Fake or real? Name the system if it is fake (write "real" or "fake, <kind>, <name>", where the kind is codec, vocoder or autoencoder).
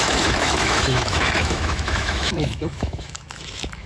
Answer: fake, autoencoder, DAC-VAE